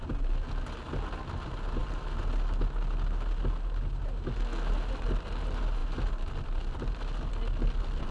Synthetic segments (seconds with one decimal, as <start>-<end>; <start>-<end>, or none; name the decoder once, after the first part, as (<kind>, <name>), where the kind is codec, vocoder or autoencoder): none